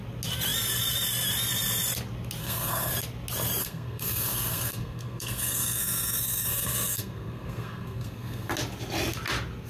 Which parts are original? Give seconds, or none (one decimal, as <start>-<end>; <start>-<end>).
0.0-2.4; 2.9-3.6; 8.5-9.7